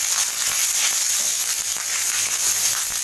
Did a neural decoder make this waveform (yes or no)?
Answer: no